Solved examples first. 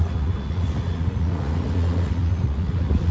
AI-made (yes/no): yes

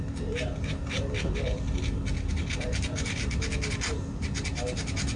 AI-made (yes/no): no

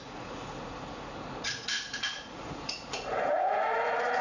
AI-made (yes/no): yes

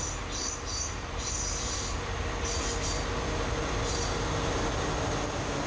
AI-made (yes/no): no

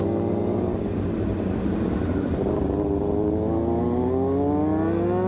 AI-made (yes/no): no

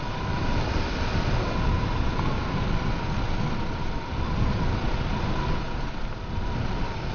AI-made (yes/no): no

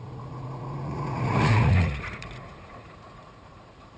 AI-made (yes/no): yes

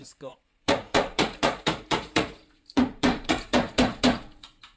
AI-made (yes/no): yes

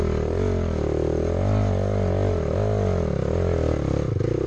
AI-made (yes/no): no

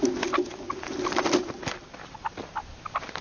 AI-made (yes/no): no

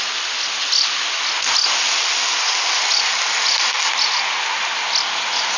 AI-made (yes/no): no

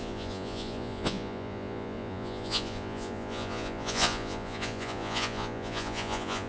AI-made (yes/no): yes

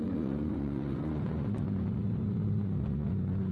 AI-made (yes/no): yes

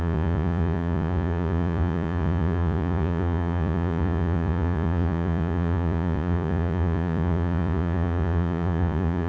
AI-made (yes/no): yes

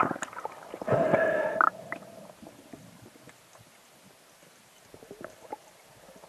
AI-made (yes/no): no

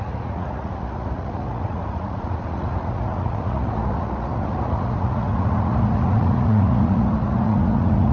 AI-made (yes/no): yes